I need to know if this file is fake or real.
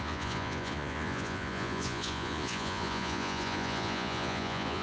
fake